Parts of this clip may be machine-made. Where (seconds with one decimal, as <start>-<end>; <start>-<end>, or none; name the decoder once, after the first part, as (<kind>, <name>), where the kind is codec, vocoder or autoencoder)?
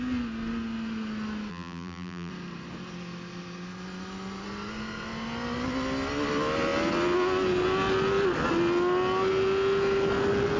1.5-2.3 (vocoder, BigVGAN v2)